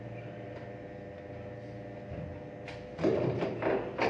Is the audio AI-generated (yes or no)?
no